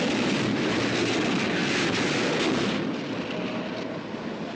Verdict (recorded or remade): recorded